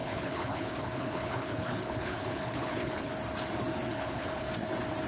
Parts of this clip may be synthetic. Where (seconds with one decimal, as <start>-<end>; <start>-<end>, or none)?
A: 0.0-3.1; 3.9-4.5